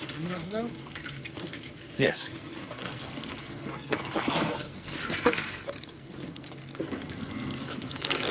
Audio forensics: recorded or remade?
remade